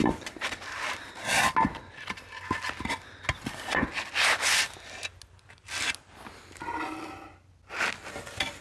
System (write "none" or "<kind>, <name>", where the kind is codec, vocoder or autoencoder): none